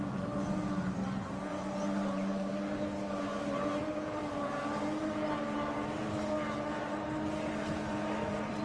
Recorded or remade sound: remade